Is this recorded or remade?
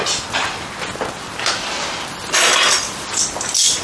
recorded